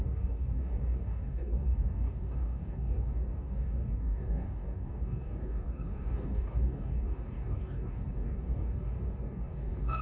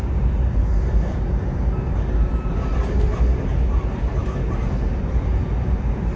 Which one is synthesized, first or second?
first